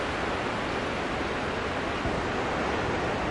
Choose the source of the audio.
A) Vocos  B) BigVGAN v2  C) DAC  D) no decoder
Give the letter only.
D